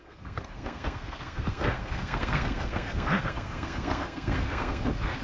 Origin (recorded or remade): remade